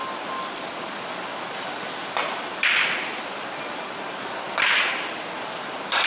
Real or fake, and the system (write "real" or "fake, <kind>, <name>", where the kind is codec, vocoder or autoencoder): real